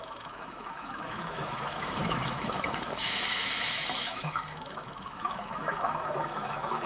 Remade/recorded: remade